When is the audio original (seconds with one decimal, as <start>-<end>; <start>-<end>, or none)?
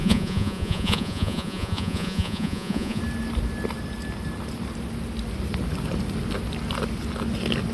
3.0-7.7